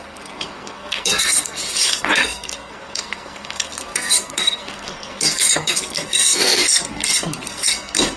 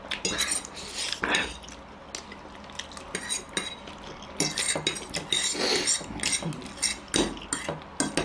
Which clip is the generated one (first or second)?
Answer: first